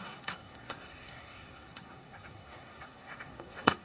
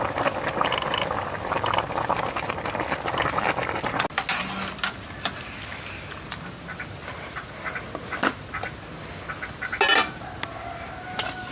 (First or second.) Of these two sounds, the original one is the second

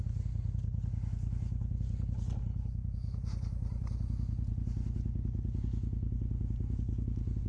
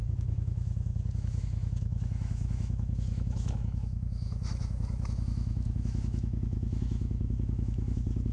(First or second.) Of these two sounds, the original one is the first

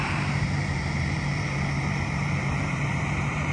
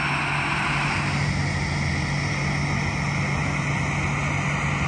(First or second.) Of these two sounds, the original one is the second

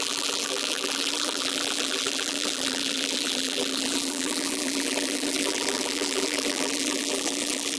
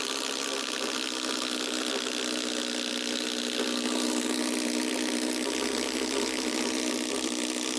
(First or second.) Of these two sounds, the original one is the second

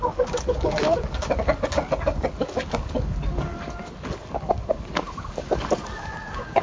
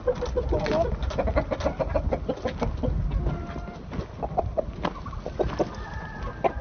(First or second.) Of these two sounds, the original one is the second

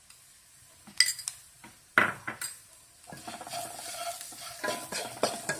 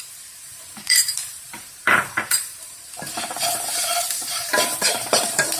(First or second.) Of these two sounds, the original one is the first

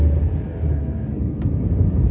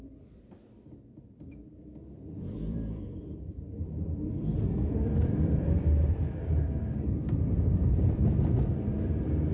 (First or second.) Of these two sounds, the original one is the first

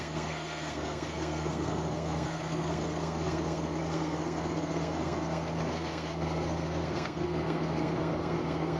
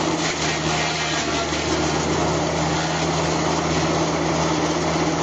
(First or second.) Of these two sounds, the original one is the second